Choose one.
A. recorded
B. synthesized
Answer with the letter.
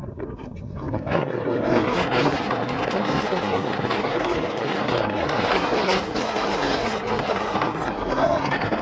B